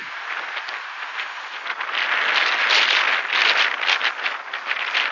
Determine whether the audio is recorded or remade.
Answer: recorded